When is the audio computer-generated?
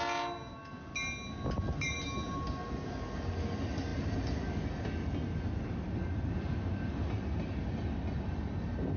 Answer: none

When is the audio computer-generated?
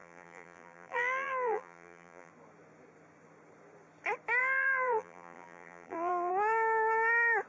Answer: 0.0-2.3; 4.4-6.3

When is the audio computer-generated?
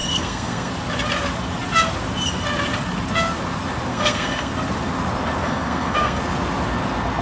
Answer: 0.0-0.7; 3.9-4.5; 5.4-6.2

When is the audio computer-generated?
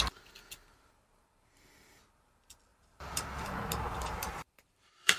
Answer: 2.7-5.2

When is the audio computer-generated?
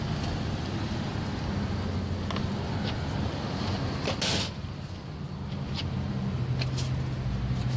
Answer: none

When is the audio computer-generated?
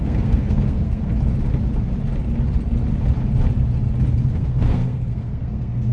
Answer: 0.0-1.1; 4.2-5.9